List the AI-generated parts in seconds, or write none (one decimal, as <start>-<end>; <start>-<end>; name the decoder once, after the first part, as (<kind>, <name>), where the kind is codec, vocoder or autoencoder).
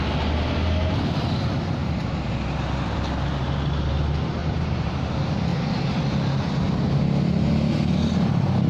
1.8-2.3 (vocoder, BigVGAN v2); 4.4-4.9